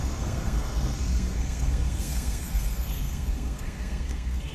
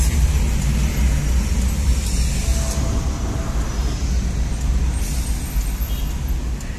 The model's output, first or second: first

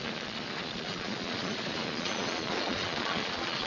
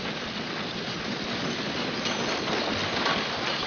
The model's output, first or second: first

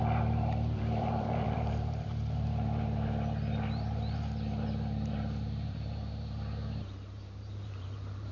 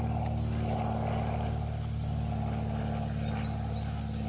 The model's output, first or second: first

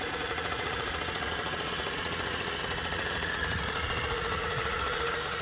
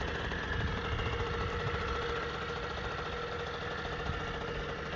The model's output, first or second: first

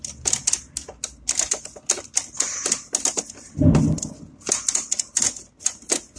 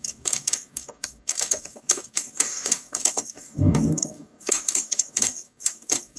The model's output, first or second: second